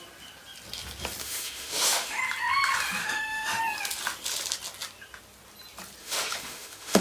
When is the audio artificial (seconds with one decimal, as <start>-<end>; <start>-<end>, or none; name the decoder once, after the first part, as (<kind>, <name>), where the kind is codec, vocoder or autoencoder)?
1.2-2.2 (autoencoder, DAC-VAE); 3.0-3.6; 6.0-7.0